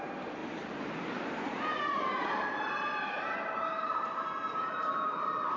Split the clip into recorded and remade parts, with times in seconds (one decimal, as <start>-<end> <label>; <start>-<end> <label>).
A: 0.0-0.4 recorded; 0.4-2.7 remade; 2.7-3.6 recorded; 3.6-4.9 remade; 4.9-5.6 recorded